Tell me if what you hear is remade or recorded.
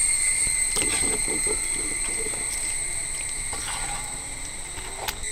recorded